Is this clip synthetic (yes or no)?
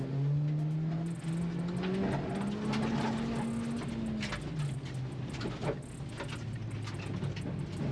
no